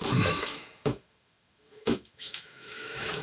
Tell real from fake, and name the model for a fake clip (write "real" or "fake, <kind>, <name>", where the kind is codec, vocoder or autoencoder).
fake, autoencoder, DAC-VAE